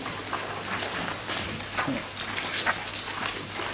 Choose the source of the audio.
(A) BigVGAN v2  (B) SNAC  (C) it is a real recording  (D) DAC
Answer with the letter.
C